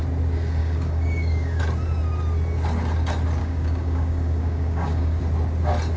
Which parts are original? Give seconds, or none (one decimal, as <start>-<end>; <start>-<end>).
0.0-0.6; 1.6-3.4; 5.2-6.0